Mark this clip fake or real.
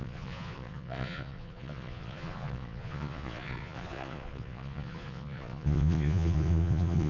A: fake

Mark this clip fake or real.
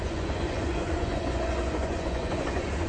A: fake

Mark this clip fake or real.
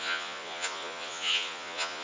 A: fake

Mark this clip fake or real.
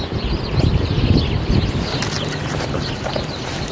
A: real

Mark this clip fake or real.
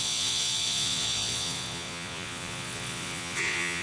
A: fake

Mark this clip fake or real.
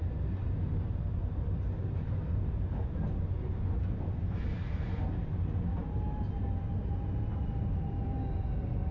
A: real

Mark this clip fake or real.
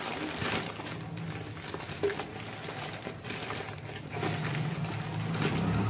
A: real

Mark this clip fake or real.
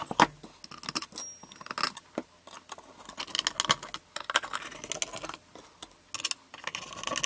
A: real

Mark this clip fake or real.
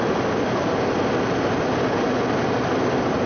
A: real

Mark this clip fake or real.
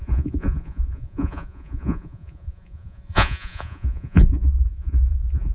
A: fake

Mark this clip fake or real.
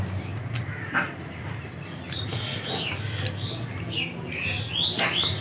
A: real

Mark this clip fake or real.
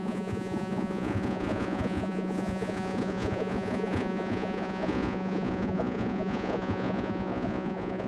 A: fake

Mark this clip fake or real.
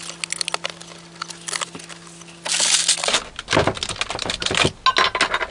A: real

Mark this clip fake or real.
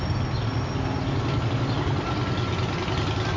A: real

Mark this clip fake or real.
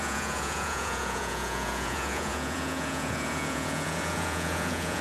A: fake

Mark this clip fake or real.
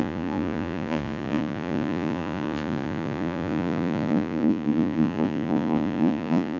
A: fake